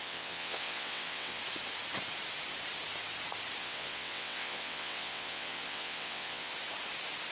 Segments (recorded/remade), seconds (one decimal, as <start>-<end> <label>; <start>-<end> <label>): 0.0-1.4 remade; 1.4-3.6 recorded; 3.6-6.5 remade; 6.5-7.3 recorded